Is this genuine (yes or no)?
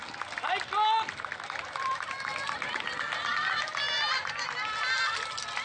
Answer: yes